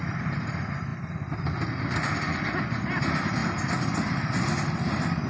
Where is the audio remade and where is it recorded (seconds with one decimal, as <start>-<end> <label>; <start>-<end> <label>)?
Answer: 0.0-3.4 recorded; 3.4-4.5 remade; 4.5-5.3 recorded